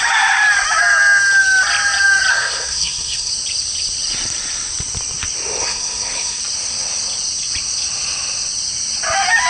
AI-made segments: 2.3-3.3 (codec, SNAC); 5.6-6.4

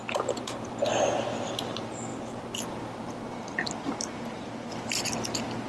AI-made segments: none

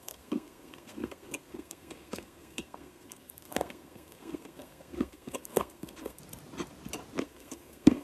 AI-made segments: 0.0-6.2 (codec, SNAC); 7.2-8.0